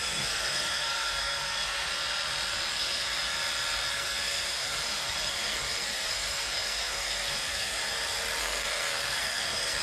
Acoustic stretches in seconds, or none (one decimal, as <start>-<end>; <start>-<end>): 1.9-2.7; 3.2-3.9; 7.8-8.4